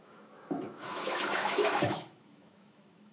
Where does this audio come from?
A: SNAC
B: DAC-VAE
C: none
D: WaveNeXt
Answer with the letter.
B